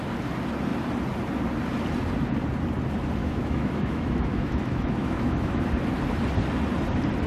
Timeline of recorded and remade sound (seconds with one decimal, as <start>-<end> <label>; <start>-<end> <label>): 0.0-3.2 recorded; 3.2-5.6 remade; 5.6-7.3 recorded